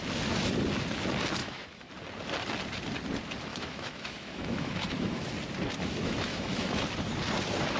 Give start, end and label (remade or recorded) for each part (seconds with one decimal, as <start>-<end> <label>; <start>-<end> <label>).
0.0-1.4 recorded; 1.4-1.9 remade; 1.9-3.5 recorded; 3.5-5.3 remade; 5.3-6.3 recorded; 6.3-6.8 remade; 6.8-7.8 recorded